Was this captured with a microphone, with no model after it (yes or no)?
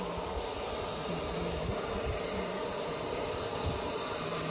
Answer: yes